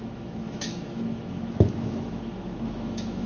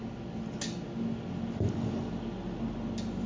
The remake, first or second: first